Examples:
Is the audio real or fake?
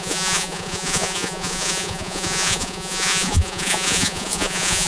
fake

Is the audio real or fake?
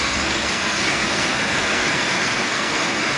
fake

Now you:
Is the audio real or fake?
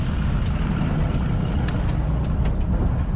real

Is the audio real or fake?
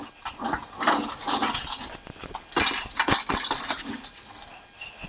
real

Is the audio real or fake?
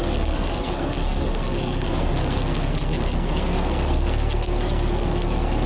fake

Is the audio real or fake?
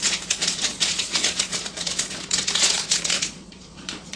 fake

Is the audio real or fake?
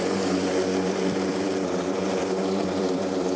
fake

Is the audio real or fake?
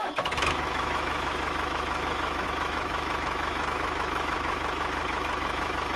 fake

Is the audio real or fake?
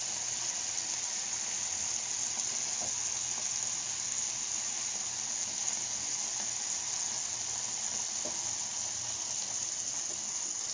real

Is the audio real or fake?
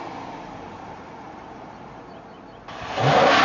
real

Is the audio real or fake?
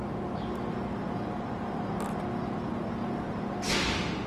real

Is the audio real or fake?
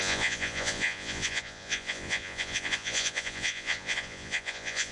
fake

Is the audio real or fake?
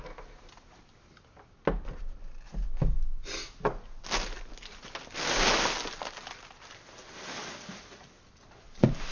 real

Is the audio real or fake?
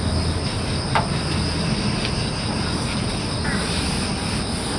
real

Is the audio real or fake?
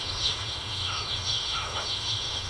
fake